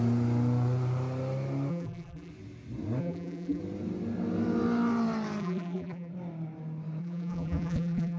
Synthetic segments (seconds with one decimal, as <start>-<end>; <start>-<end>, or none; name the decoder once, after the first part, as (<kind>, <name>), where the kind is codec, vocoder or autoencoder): 1.7-2.3 (vocoder, BigVGAN v2); 3.0-3.6; 5.4-6.1; 7.0-8.2